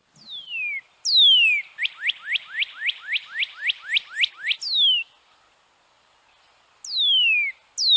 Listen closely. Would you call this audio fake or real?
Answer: real